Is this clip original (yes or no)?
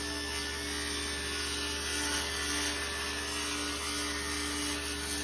yes